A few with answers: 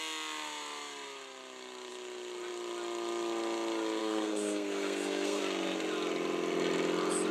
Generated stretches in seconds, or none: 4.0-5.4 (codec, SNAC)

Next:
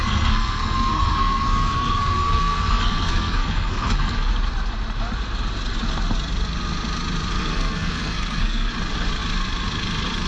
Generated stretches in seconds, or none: 0.0-4.3 (codec, SNAC); 7.4-8.7

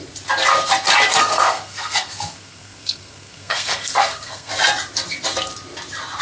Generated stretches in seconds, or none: 1.1-4.5 (codec, SNAC)

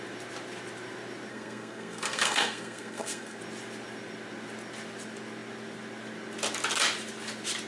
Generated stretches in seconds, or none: 1.3-3.4 (codec, SNAC)

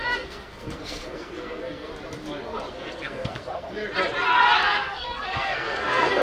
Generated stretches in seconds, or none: 0.0-1.9 (codec, SNAC); 2.7-3.8; 4.8-6.2

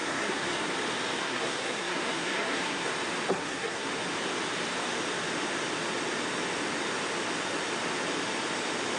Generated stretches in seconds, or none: 0.0-0.7 (codec, SNAC); 1.2-2.9; 3.3-3.9

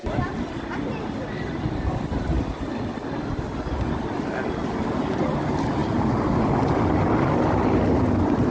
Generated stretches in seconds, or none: none